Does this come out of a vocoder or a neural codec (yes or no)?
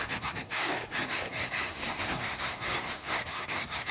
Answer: yes